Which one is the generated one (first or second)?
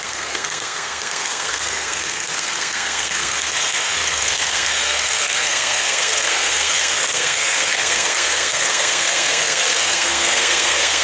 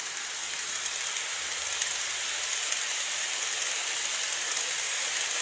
first